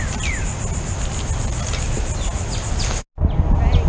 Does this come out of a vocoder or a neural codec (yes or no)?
no